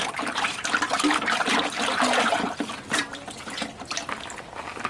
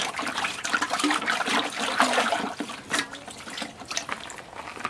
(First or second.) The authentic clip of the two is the first